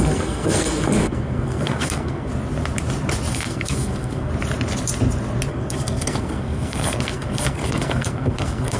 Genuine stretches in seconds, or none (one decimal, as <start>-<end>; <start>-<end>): 2.3-3.3; 4.3-5.5